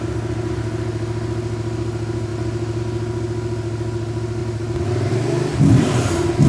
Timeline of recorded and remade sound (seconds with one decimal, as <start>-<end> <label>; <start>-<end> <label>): 0.0-5.5 recorded; 5.5-6.1 remade; 6.1-6.5 recorded